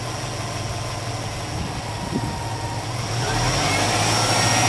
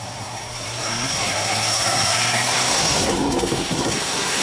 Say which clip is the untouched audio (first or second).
first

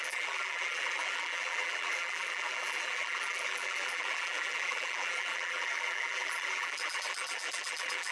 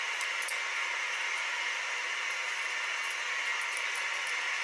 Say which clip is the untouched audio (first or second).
second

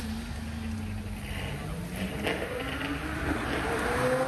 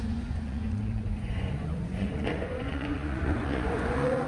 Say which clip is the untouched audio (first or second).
first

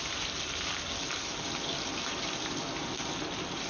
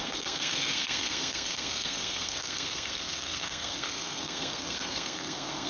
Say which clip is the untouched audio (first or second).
first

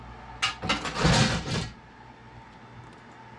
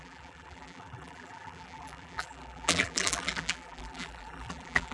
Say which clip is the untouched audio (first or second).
first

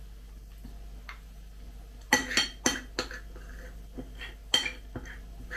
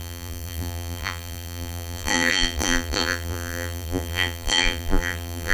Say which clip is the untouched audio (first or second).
first